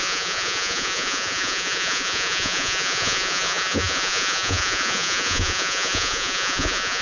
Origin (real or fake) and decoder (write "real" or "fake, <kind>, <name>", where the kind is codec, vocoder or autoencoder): fake, vocoder, Vocos